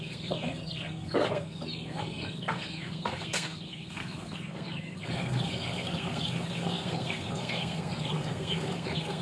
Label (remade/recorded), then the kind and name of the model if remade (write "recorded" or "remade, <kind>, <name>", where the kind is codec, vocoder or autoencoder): remade, codec, SNAC